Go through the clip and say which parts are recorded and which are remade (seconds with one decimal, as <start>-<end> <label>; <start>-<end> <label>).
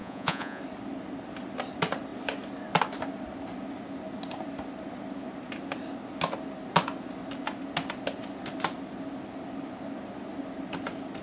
0.0-0.6 remade; 0.6-11.2 recorded